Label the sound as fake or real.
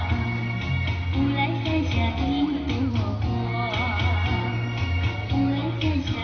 real